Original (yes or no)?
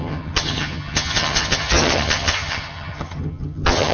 no